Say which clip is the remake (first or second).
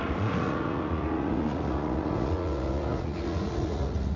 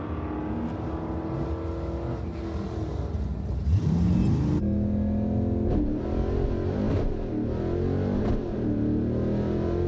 first